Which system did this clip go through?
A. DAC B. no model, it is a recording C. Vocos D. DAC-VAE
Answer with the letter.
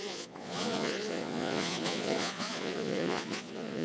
C